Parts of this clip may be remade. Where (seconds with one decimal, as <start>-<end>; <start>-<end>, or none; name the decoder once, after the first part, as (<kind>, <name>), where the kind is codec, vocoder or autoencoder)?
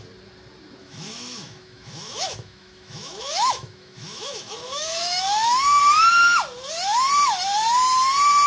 0.8-5.8 (autoencoder, DAC-VAE)